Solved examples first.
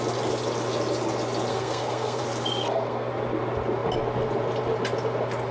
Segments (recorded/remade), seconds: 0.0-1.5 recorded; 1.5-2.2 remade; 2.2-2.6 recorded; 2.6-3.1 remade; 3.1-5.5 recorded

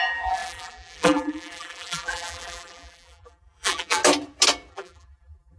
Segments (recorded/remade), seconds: 0.0-4.0 remade; 4.0-4.7 recorded; 4.7-5.6 remade

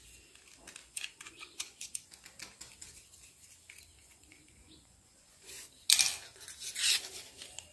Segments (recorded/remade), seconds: 0.0-0.8 recorded; 0.8-2.1 remade; 2.1-4.0 recorded; 4.0-5.6 remade; 5.6-7.7 recorded

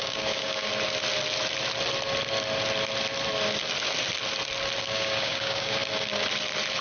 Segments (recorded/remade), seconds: 0.0-0.7 remade; 0.7-4.8 recorded; 4.8-5.8 remade; 5.8-6.8 recorded